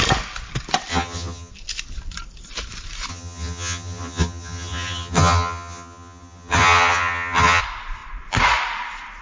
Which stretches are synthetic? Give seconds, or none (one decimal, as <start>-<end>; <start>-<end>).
0.9-1.5; 3.1-7.6